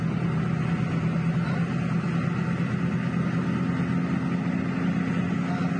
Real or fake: real